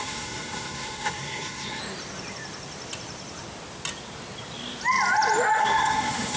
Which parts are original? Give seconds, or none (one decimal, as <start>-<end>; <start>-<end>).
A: 1.8-5.6